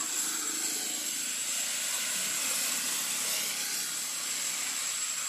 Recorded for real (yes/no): yes